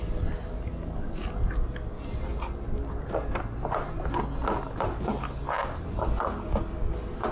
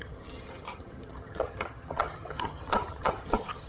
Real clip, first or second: first